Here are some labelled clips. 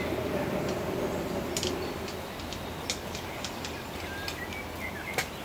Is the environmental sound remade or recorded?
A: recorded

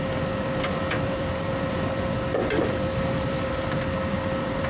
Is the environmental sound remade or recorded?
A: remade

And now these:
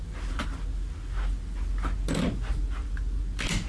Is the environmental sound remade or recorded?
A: recorded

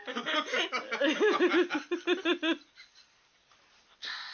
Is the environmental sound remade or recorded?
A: recorded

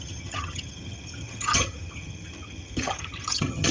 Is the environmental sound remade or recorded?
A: remade